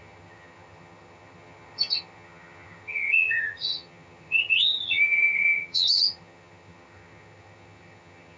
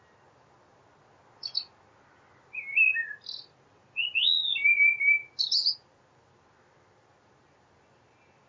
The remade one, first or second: first